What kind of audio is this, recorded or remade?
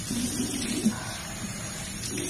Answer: remade